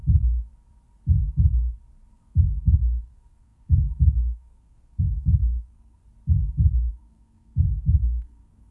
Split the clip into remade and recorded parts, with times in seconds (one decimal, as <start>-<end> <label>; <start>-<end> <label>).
0.0-2.1 recorded; 2.1-6.0 remade; 6.0-6.9 recorded; 6.9-8.7 remade

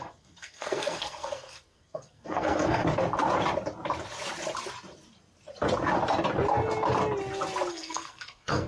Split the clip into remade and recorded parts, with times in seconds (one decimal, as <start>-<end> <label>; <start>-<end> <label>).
0.0-2.8 remade; 2.8-7.7 recorded; 7.7-8.7 remade

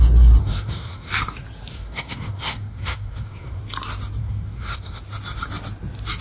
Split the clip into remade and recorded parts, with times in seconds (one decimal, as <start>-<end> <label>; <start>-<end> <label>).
0.0-0.4 recorded; 0.4-1.1 remade; 1.1-1.7 recorded; 1.7-3.6 remade; 3.6-4.2 recorded; 4.2-5.0 remade; 5.0-6.2 recorded

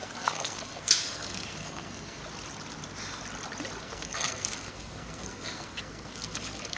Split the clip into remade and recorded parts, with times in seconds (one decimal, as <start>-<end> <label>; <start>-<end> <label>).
0.0-2.2 remade; 2.2-3.8 recorded; 3.8-6.8 remade

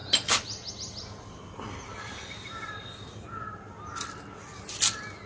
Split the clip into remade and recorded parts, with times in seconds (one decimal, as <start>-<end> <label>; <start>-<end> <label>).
0.0-5.3 recorded

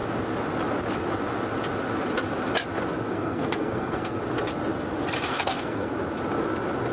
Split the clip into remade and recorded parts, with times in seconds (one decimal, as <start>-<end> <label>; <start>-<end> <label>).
0.0-3.1 recorded; 3.1-4.2 remade; 4.2-5.3 recorded; 5.3-5.9 remade; 5.9-6.9 recorded

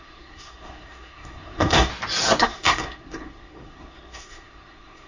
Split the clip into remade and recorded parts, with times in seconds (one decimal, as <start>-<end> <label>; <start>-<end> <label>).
0.0-1.9 remade; 1.9-2.4 recorded; 2.4-5.1 remade

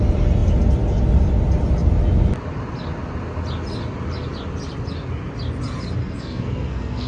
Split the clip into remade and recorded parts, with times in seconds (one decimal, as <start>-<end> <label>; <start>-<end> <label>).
0.0-6.0 recorded; 6.0-7.1 remade